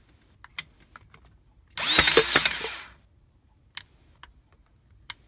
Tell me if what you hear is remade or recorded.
recorded